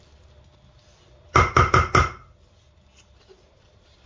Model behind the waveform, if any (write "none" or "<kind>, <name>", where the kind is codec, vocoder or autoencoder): none